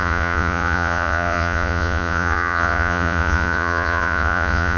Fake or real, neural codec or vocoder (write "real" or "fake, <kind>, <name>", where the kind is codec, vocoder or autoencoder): fake, vocoder, Vocos